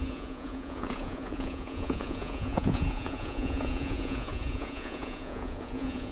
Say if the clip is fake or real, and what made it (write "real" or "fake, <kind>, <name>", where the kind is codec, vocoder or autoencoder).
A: fake, vocoder, Vocos